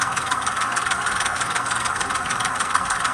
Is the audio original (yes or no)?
no